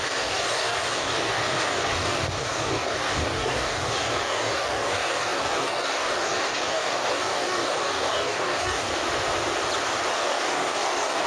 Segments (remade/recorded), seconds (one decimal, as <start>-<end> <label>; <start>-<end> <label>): 0.0-8.9 remade; 8.9-10.1 recorded; 10.1-11.3 remade

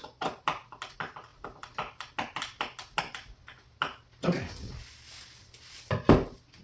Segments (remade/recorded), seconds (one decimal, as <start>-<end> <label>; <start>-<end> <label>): 0.0-6.6 recorded

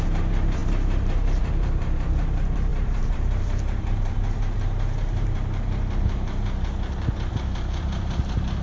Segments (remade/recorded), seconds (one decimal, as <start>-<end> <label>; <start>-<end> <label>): 0.0-8.6 remade

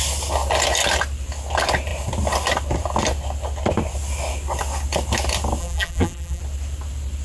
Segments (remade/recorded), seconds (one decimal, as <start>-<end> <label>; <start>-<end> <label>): 0.0-5.6 recorded; 5.6-6.4 remade; 6.4-7.2 recorded

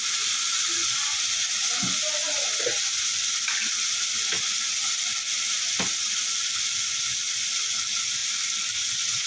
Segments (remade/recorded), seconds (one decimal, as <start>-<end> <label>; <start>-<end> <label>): 0.0-9.3 recorded

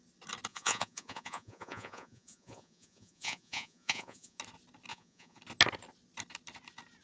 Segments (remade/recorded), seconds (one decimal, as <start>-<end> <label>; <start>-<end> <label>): 0.0-0.5 recorded; 0.5-4.4 remade; 4.4-4.9 recorded; 4.9-5.4 remade; 5.4-7.0 recorded